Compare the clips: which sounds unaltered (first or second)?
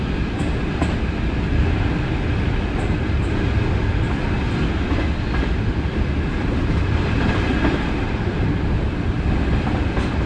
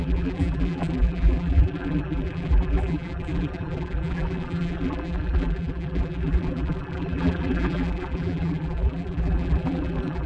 first